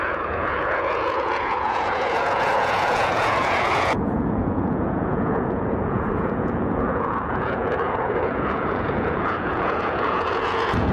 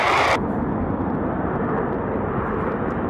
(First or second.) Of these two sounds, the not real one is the first